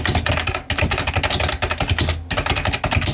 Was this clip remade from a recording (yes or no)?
no